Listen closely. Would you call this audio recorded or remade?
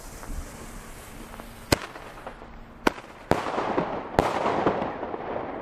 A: recorded